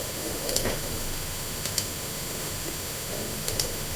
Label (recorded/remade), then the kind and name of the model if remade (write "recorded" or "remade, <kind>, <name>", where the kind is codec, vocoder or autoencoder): remade, autoencoder, DAC-VAE